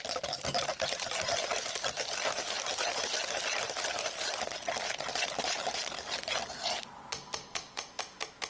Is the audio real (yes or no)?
yes